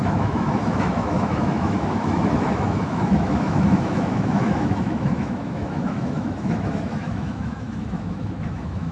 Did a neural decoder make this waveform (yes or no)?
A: yes